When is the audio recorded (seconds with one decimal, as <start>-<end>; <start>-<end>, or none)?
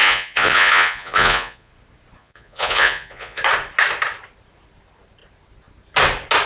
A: 1.7-2.2; 3.4-6.5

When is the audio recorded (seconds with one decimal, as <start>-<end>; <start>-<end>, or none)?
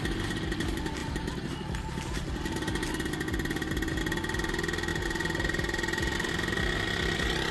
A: 0.0-1.0; 2.0-4.9; 6.3-7.5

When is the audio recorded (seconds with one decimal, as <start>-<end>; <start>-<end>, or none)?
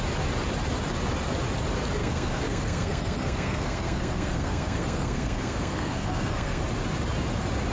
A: 0.0-2.0; 6.6-7.7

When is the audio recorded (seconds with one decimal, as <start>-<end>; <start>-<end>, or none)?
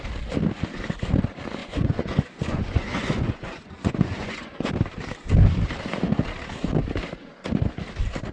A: 0.0-1.6; 4.7-8.3